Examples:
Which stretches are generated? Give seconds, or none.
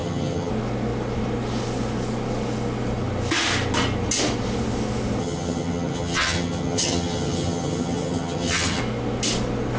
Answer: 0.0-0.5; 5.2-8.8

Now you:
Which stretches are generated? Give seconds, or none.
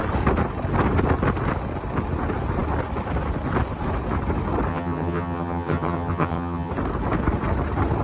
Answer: 4.7-6.7